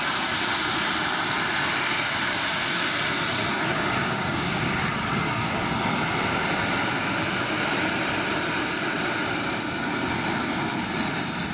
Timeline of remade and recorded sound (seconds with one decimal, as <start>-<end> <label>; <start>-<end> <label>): 0.0-3.5 recorded; 3.5-5.7 remade; 5.7-11.5 recorded